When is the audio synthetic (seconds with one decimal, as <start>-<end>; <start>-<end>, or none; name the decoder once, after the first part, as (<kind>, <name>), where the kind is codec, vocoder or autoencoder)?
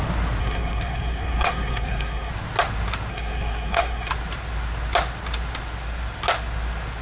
0.4-2.3 (codec, SNAC); 3.1-4.1